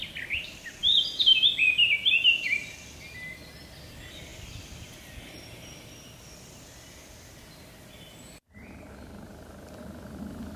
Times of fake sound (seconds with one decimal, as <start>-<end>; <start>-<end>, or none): none